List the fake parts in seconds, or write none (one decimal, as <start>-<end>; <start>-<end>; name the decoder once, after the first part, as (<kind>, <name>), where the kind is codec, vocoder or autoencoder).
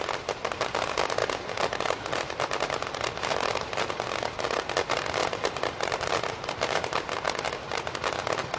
1.2-3.9 (vocoder, BigVGAN v2); 5.2-7.1